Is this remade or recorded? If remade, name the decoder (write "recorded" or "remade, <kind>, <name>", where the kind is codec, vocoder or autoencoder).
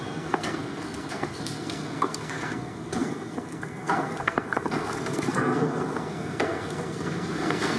remade, codec, SNAC